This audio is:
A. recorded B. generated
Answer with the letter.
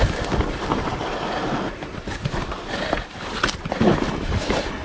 A